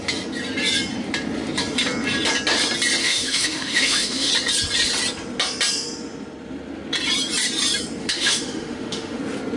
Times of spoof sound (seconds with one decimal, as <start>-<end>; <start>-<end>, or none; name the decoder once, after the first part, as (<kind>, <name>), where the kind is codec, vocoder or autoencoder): 3.0-4.3 (autoencoder, DAC-VAE); 8.0-9.2